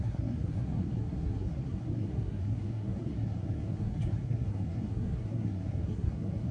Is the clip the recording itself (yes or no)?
no